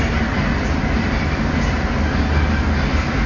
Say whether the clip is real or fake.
real